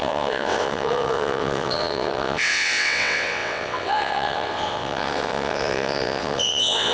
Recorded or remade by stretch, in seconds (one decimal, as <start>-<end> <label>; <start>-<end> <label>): 0.0-6.9 remade